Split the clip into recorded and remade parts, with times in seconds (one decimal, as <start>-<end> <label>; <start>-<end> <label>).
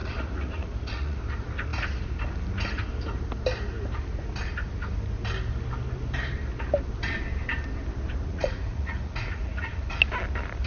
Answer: 0.0-1.2 remade; 1.2-8.3 recorded; 8.3-10.0 remade; 10.0-10.7 recorded